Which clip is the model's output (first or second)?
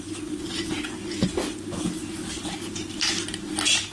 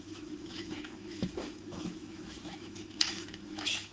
second